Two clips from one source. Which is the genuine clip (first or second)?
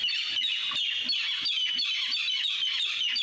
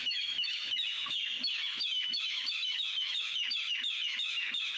first